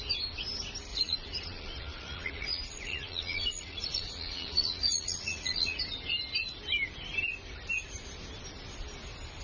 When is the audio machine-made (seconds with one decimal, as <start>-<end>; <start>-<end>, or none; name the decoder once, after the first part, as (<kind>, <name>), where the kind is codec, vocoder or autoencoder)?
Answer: 0.9-5.8 (vocoder, Vocos)